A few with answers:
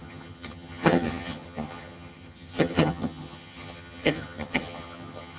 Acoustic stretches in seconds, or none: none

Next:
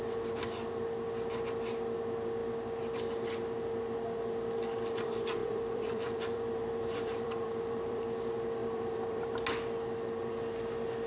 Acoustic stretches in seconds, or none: 0.0-5.4; 8.0-8.6; 9.2-11.1

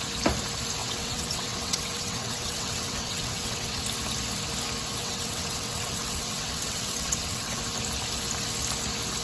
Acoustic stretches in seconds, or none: 0.0-0.8; 3.8-5.0; 7.6-9.2

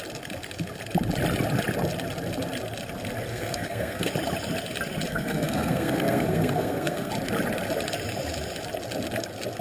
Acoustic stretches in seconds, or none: 0.0-3.3; 4.1-5.1; 7.1-9.6

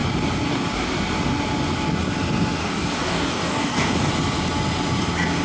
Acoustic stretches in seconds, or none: 0.0-2.6; 4.1-5.4

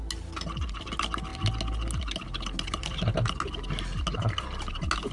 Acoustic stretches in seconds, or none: 0.0-5.1

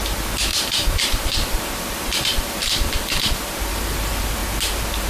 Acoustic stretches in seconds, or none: 0.0-0.5; 3.6-5.1